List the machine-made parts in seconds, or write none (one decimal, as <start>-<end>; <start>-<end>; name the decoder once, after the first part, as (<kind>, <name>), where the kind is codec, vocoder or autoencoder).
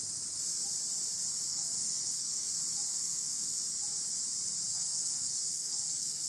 1.5-2.5 (codec, SNAC); 2.9-3.6; 4.7-6.3